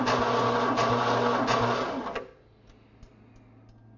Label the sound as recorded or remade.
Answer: recorded